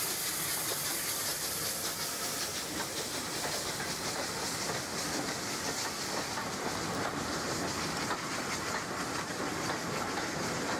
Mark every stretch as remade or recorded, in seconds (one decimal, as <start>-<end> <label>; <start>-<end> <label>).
0.0-10.8 recorded